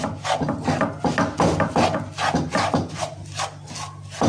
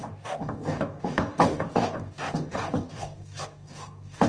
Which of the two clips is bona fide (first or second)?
first